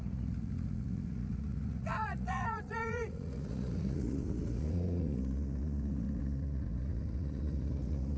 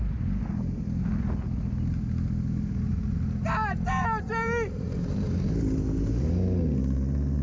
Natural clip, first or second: second